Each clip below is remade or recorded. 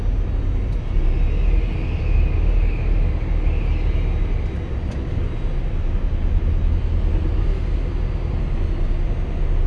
recorded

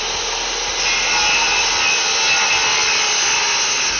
recorded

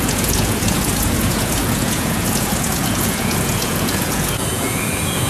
remade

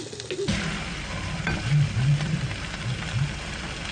recorded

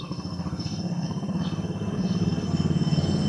remade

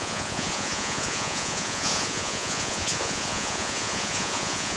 remade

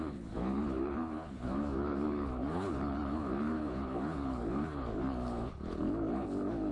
remade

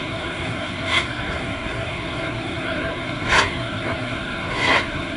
remade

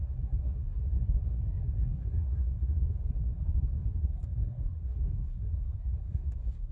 remade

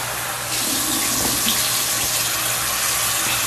recorded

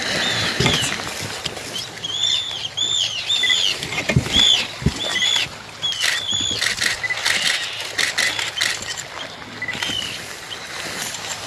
recorded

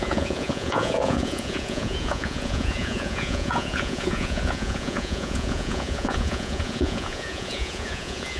remade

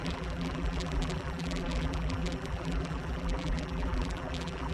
remade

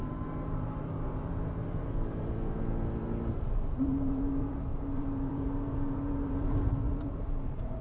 remade